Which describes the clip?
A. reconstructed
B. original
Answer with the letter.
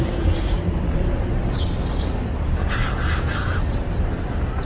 B